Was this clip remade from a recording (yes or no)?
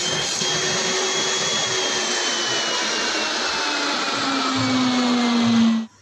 no